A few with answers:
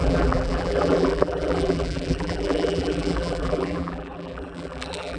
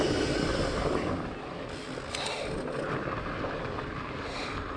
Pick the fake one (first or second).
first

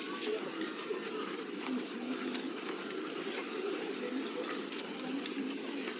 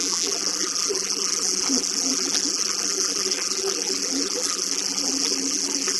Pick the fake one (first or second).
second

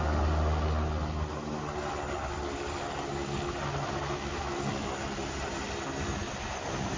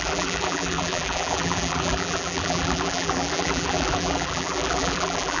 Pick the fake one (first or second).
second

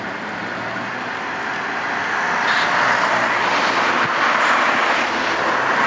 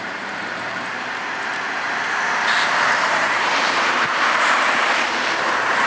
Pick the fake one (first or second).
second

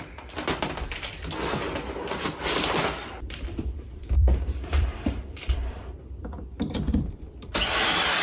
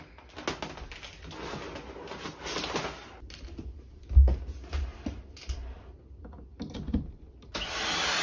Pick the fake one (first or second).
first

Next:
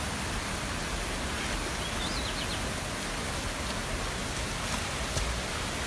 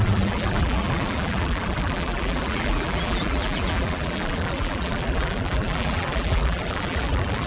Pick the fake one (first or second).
second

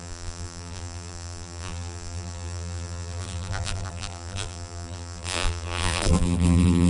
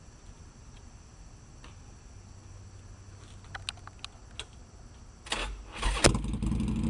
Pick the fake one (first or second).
first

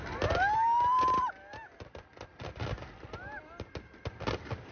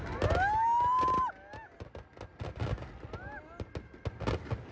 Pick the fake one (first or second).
first